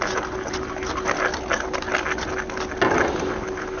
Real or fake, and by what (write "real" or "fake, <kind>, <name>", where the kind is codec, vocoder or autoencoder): real